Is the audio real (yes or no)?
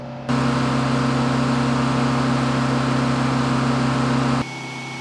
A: yes